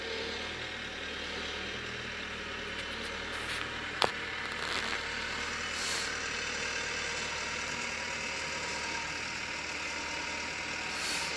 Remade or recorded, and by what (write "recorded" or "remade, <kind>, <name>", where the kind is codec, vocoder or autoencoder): recorded